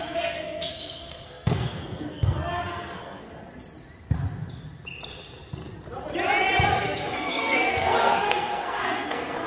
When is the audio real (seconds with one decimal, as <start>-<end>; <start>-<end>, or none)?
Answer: 3.3-6.8

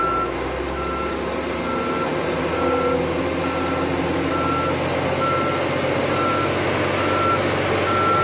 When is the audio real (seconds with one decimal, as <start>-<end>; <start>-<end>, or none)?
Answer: 0.0-8.2

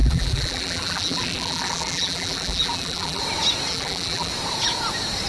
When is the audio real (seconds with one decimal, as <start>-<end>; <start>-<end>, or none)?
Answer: 3.2-3.7; 4.3-5.3

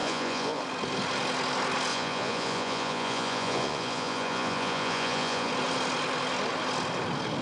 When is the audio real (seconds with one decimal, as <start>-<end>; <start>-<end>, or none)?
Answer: 0.6-1.9; 5.5-7.4

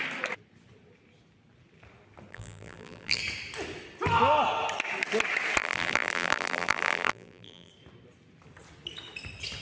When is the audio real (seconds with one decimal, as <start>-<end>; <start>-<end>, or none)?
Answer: 0.0-2.3; 3.2-5.6; 7.7-9.6

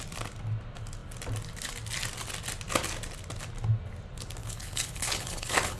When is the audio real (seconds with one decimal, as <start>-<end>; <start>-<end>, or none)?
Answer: 0.0-4.4

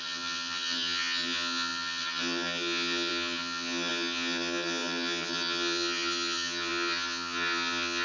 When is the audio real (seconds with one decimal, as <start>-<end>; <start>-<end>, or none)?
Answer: none